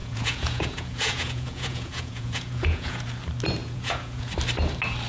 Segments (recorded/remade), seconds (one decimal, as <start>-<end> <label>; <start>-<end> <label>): 0.0-3.0 remade; 3.0-3.6 recorded; 3.6-4.3 remade; 4.3-5.1 recorded